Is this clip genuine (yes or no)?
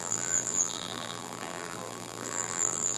no